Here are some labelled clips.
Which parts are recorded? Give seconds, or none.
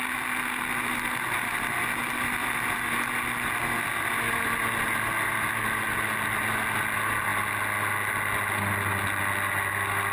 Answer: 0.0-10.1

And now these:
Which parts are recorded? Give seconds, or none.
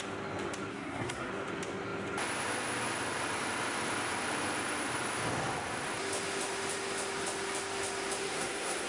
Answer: 0.0-0.7; 1.3-8.2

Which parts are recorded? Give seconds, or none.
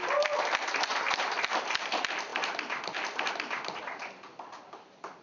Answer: 0.0-5.2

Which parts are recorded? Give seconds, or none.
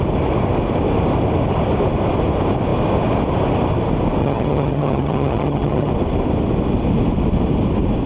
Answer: 0.0-4.2; 5.9-8.1